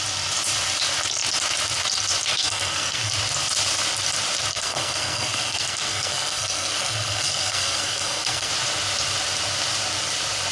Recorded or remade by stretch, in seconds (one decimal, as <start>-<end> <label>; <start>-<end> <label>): 0.0-2.3 recorded; 2.3-3.1 remade; 3.1-4.5 recorded; 4.5-8.5 remade; 8.5-10.5 recorded